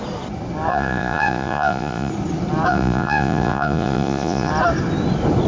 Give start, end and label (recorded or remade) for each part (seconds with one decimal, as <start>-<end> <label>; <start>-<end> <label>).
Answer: 0.0-0.7 recorded; 0.7-2.1 remade; 2.1-2.7 recorded; 2.7-4.5 remade; 4.5-5.5 recorded